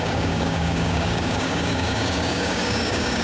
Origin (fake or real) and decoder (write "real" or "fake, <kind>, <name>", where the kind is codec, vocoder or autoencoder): fake, codec, DAC